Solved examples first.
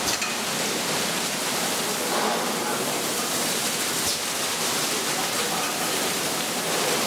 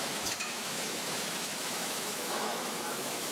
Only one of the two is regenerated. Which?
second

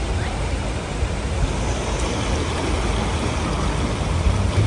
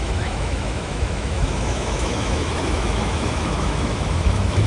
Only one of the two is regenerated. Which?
second